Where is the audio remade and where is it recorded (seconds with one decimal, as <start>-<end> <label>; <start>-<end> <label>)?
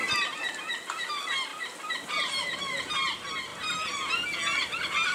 0.0-0.5 remade; 0.5-1.5 recorded; 1.5-2.6 remade; 2.6-3.5 recorded; 3.5-4.1 remade; 4.1-5.1 recorded